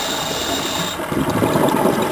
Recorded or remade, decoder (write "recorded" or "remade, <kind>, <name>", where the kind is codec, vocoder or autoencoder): recorded